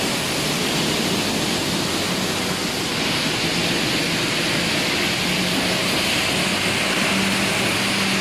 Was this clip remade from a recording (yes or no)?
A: no